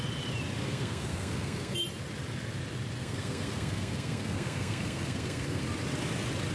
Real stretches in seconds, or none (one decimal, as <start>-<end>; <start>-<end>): 0.0-0.6; 1.8-3.0; 5.6-6.5